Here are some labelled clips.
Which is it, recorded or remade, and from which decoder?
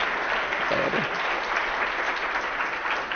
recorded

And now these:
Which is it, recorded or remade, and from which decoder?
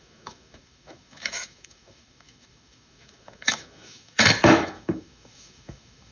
remade, autoencoder, DAC-VAE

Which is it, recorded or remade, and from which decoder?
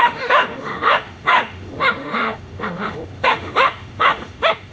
remade, autoencoder, DAC-VAE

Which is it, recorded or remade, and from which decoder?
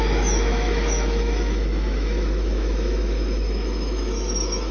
remade, autoencoder, DAC-VAE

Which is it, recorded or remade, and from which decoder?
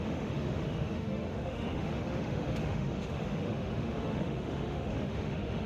remade, autoencoder, DAC-VAE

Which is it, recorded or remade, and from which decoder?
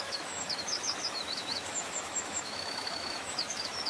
remade, autoencoder, DAC-VAE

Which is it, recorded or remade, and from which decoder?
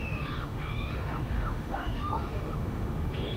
remade, autoencoder, DAC-VAE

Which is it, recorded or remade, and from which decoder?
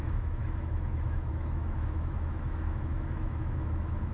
remade, autoencoder, DAC-VAE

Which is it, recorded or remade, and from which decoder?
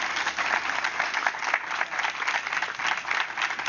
recorded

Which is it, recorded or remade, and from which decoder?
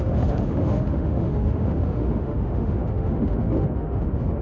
remade, autoencoder, DAC-VAE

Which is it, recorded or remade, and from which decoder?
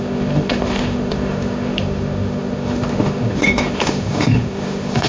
remade, autoencoder, DAC-VAE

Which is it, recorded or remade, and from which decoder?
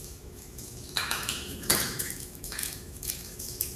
remade, autoencoder, DAC-VAE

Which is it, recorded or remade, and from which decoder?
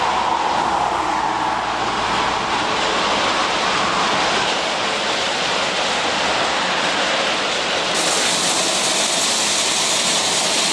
recorded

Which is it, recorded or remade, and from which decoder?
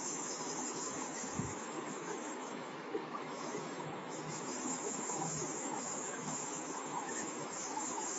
remade, autoencoder, DAC-VAE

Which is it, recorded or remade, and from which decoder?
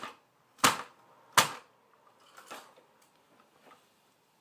recorded